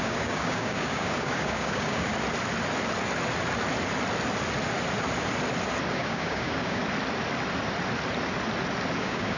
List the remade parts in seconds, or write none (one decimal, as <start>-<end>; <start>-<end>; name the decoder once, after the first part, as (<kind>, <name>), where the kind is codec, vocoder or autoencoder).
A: 0.0-2.1 (codec, DAC); 5.9-6.8; 9.0-9.4